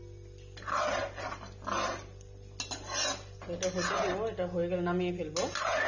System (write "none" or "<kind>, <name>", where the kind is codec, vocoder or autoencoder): none